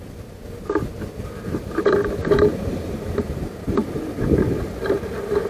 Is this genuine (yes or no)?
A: no